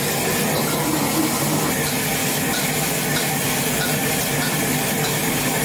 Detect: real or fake real